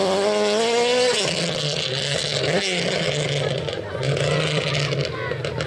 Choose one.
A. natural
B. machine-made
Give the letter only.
A